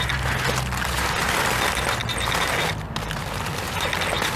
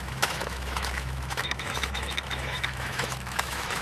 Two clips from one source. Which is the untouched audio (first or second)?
first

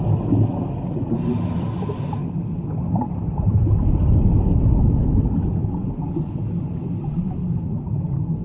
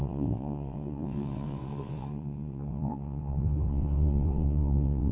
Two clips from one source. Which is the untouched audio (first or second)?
first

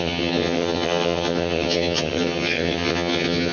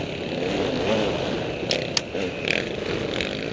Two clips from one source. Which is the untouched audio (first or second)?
second